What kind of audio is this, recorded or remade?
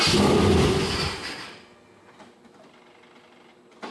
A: recorded